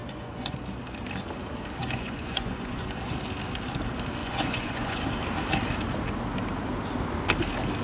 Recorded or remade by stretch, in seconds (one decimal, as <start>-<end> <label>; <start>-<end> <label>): 0.0-0.6 remade; 0.6-1.8 recorded; 1.8-3.0 remade; 3.0-4.2 recorded; 4.2-5.0 remade; 5.0-7.8 recorded